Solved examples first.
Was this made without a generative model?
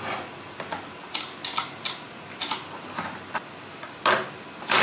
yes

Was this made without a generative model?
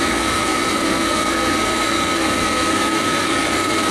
no